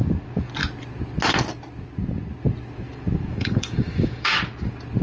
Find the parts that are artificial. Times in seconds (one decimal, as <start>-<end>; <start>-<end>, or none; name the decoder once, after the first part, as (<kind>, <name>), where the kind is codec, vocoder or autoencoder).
3.3-4.4 (codec, DAC)